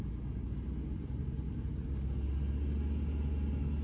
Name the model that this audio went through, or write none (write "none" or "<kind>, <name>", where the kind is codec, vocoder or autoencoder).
none